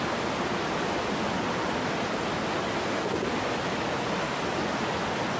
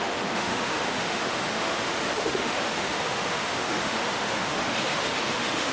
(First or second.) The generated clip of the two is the second